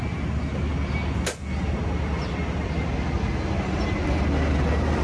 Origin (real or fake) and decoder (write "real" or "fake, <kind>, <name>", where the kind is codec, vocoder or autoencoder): real